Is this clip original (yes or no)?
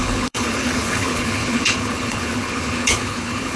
no